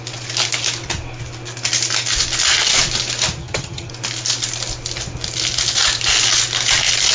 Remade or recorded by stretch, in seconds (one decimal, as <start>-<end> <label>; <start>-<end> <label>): 0.0-3.4 recorded; 3.4-3.9 remade; 3.9-7.1 recorded